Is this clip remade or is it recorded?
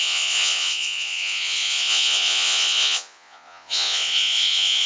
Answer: remade